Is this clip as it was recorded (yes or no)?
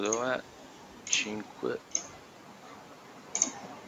yes